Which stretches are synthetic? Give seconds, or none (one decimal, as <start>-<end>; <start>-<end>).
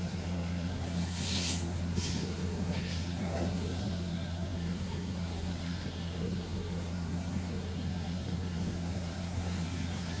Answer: 0.0-10.2